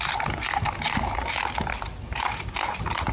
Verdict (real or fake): real